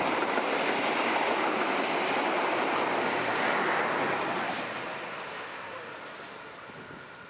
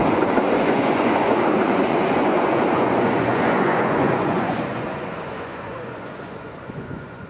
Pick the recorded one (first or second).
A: first